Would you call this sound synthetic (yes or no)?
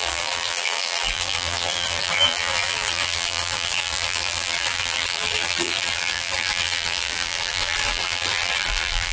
yes